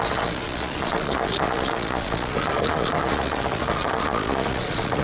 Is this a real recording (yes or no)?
no